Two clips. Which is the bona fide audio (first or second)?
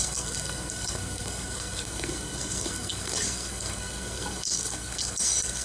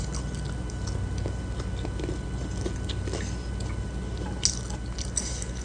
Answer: second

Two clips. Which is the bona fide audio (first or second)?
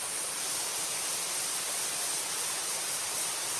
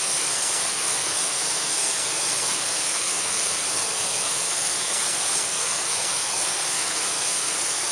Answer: first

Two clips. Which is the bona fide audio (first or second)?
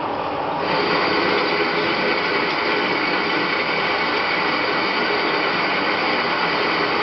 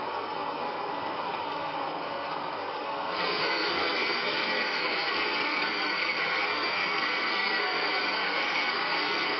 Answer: first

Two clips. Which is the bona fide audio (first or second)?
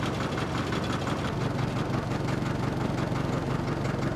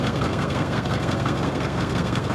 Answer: first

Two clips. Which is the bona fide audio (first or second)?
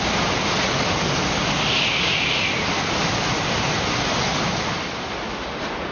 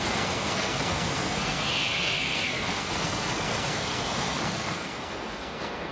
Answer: first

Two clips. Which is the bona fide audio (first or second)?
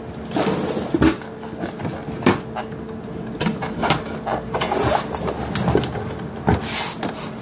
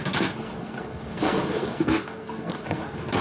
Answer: first